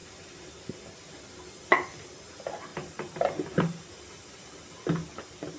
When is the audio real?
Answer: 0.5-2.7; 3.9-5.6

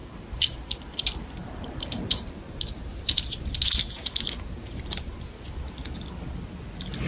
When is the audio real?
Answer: 2.3-7.1

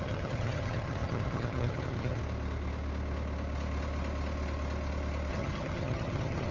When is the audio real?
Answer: 2.2-5.3